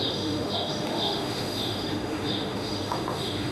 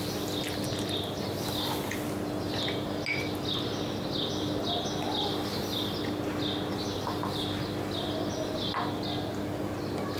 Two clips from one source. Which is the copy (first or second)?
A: first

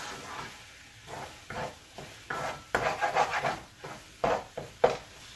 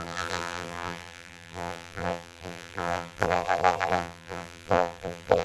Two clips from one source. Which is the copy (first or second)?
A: second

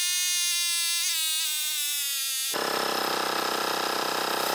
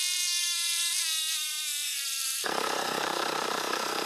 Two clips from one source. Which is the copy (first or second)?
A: second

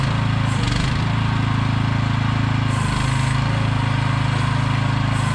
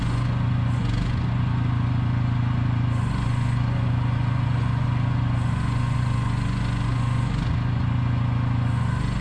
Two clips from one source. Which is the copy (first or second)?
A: second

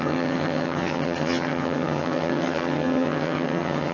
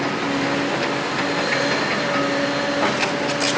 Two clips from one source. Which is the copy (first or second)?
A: first